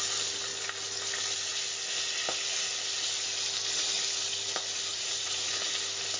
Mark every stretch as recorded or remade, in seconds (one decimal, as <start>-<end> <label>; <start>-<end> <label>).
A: 0.0-4.9 recorded; 4.9-5.5 remade; 5.5-6.2 recorded